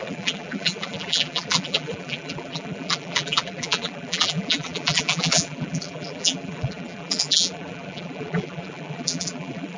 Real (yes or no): no